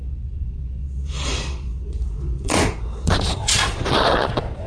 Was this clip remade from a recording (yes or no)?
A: yes